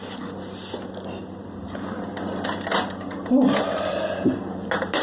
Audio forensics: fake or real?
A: real